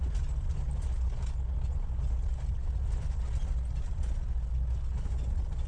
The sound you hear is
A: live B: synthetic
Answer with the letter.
A